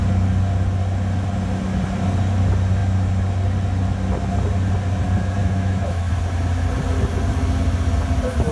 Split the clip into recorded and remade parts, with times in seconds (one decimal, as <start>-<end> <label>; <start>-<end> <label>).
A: 0.0-5.4 recorded; 5.4-6.1 remade; 6.1-8.5 recorded

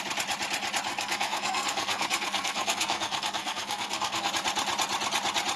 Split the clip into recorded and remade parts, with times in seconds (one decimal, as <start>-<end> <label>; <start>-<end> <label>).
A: 0.0-0.9 recorded; 0.9-4.3 remade; 4.3-5.6 recorded

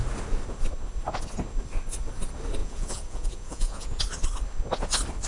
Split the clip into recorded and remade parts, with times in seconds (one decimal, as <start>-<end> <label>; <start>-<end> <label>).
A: 0.0-2.6 recorded; 2.6-4.0 remade; 4.0-5.3 recorded

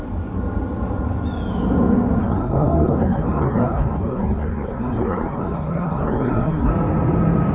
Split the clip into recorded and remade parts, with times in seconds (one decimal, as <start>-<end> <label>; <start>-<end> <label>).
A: 0.0-2.2 recorded; 2.2-6.7 remade; 6.7-7.5 recorded

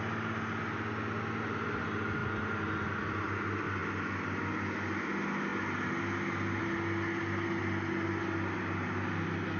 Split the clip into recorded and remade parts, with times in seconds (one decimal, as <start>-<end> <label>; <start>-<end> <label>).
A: 0.0-9.6 recorded

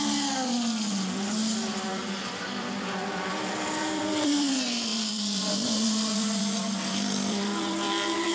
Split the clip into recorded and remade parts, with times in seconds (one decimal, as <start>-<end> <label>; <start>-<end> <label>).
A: 0.0-1.4 recorded; 1.4-4.5 remade; 4.5-4.9 recorded; 4.9-7.9 remade; 7.9-8.3 recorded

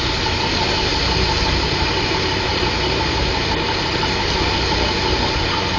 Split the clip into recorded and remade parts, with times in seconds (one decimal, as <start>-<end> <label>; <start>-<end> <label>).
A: 0.0-2.5 recorded; 2.5-3.2 remade; 3.2-5.8 recorded